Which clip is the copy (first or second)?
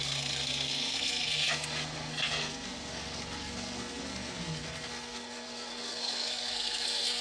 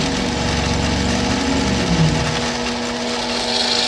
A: first